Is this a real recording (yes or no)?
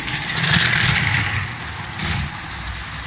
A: yes